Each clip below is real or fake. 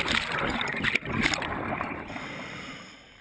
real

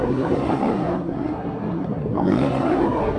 fake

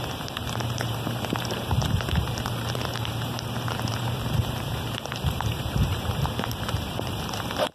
fake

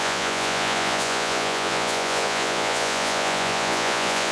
fake